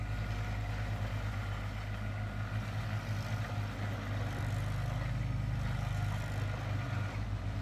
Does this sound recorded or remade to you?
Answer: recorded